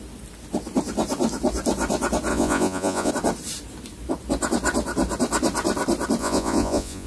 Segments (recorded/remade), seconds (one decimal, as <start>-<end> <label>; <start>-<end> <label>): 0.0-2.3 recorded; 2.3-3.1 remade; 3.1-6.2 recorded; 6.2-7.1 remade